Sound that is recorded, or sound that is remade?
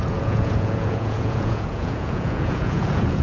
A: remade